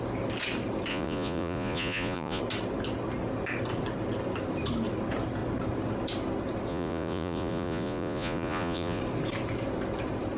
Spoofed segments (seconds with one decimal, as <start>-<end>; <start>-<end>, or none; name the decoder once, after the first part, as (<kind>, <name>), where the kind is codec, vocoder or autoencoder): 0.9-2.4 (vocoder, Vocos); 6.7-9.0